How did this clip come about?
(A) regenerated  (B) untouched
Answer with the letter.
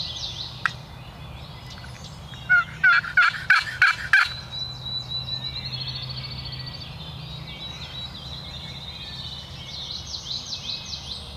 B